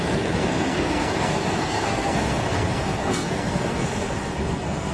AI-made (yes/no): yes